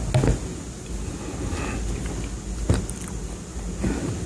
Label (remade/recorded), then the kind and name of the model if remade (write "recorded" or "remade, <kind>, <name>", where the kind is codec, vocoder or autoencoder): recorded